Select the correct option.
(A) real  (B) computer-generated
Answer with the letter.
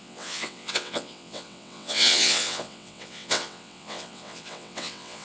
B